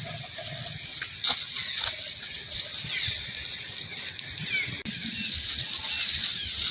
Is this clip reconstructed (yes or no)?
no